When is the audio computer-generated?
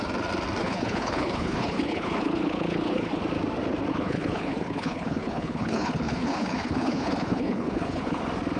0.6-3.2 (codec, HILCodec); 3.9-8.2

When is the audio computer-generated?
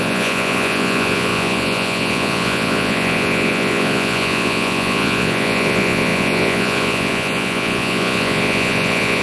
0.0-9.2 (vocoder, Vocos)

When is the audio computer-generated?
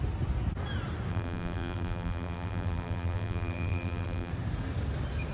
1.1-4.3 (vocoder, BigVGAN v2)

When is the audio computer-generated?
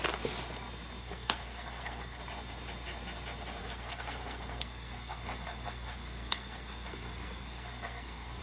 1.0-2.2 (codec, SNAC); 3.6-8.4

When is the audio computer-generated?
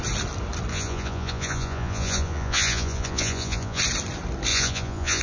0.7-3.8 (vocoder, Vocos); 4.5-5.2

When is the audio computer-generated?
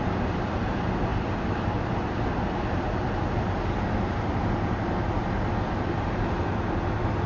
none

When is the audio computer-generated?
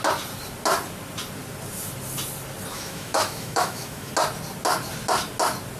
2.7-4.1 (autoencoder, DAC-VAE)